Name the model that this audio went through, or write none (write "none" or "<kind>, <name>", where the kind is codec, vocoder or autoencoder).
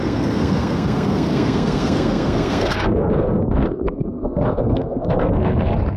codec, SNAC